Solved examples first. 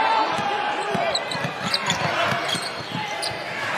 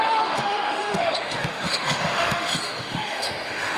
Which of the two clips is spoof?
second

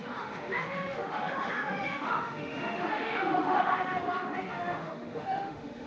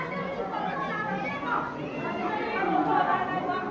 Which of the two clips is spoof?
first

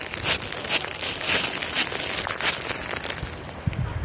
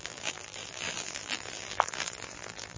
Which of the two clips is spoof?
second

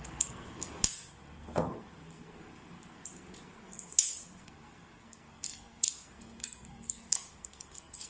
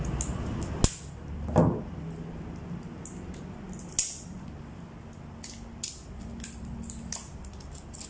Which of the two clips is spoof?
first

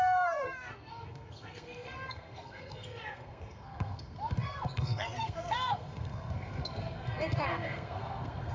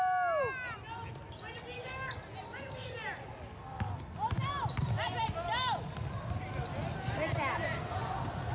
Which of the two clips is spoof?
first